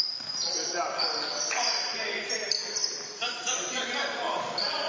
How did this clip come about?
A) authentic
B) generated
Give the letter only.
B